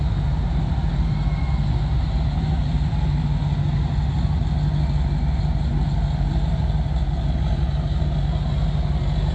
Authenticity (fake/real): real